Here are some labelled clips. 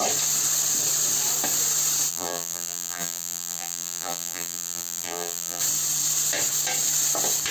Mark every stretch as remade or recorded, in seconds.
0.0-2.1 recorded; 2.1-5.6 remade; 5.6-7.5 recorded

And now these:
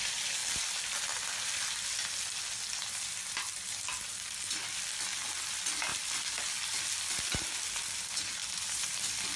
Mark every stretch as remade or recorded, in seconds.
0.0-5.9 recorded; 5.9-7.7 remade; 7.7-8.4 recorded; 8.4-9.4 remade

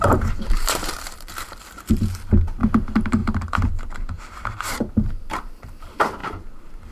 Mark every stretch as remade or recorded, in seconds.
0.0-6.9 remade